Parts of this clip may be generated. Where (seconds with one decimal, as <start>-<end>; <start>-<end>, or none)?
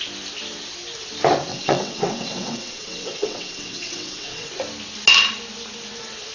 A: 1.5-4.5